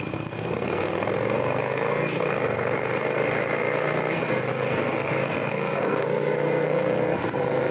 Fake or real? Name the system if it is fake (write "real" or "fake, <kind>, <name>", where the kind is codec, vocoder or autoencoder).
fake, codec, SNAC